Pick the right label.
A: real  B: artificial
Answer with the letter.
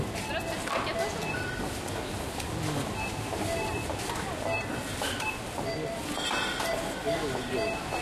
A